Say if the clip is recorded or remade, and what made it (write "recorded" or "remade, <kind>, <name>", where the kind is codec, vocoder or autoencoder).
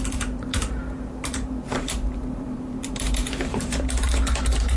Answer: remade, vocoder, BigVGAN v2